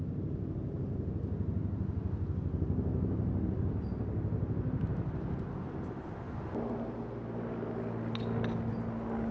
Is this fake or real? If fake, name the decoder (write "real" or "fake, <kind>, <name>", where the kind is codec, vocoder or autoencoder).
real